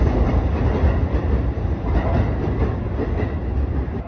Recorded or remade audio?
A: recorded